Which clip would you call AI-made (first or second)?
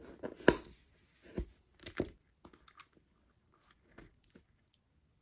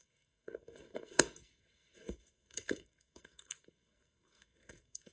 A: second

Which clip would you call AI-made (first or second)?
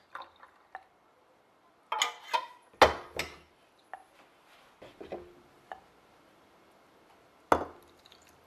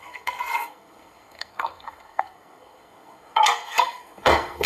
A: second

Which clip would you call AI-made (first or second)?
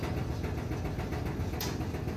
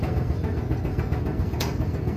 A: second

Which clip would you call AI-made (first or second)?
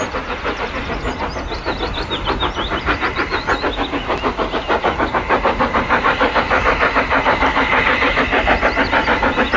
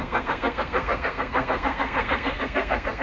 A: second